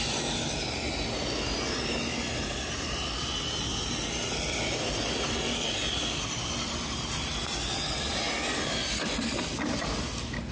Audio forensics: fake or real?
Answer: real